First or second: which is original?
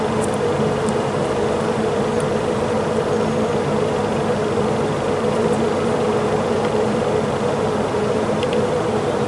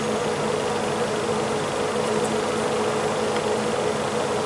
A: second